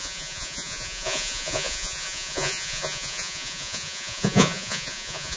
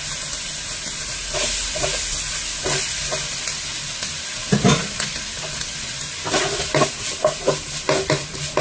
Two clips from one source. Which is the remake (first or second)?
first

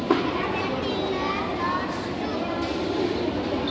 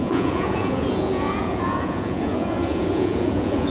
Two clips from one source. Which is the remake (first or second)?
second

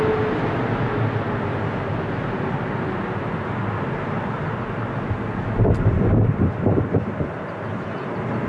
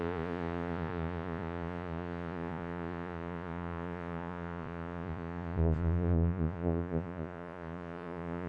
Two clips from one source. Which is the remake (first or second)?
second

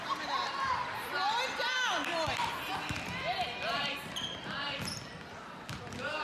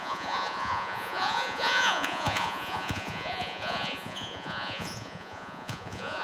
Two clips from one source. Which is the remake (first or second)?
second